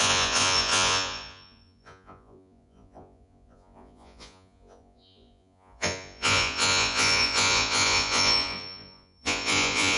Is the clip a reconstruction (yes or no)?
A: yes